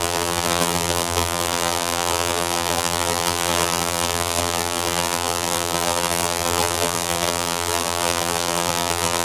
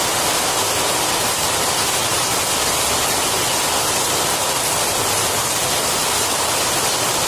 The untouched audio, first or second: second